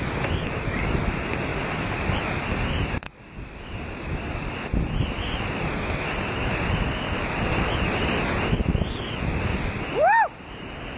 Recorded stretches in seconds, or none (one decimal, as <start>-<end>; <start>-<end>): 0.0-11.0